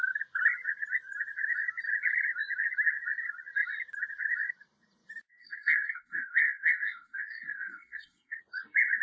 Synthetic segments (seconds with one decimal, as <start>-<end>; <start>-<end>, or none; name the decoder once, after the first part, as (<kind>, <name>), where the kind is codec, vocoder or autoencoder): 5.4-8.4 (codec, SNAC)